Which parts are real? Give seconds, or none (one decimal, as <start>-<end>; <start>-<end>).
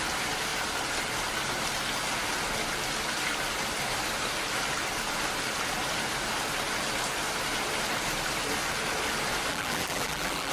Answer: 0.0-9.5